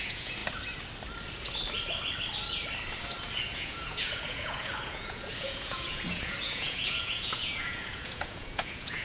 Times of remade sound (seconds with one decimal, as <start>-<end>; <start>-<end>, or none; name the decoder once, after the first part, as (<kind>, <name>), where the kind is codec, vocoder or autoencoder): 0.0-0.4 (vocoder, Vocos); 3.3-9.0